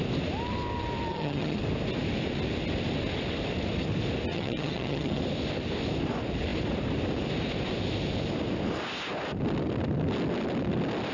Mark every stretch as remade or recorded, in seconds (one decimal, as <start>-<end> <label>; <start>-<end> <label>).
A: 0.0-1.1 recorded; 1.1-1.6 remade; 1.6-4.3 recorded; 4.3-5.2 remade; 5.2-11.1 recorded